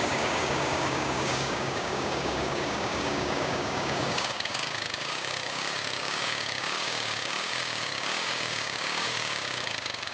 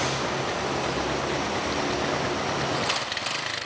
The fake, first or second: first